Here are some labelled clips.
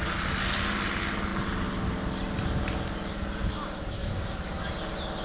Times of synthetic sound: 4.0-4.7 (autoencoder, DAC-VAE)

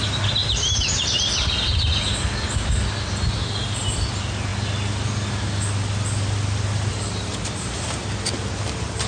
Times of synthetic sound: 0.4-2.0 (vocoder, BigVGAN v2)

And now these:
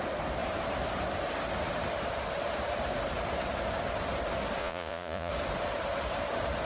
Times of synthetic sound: 4.6-5.3 (vocoder, Vocos)

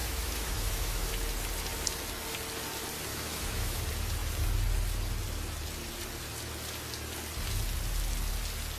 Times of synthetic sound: 0.0-1.1 (autoencoder, DAC-VAE); 3.1-3.8

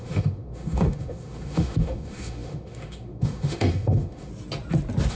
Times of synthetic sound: 0.0-4.3 (autoencoder, DAC-VAE)

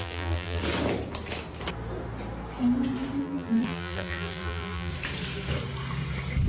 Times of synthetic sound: 0.0-0.6 (vocoder, BigVGAN v2); 3.2-4.9